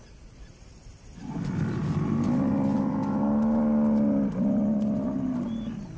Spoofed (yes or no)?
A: no